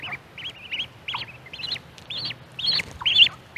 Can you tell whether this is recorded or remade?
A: recorded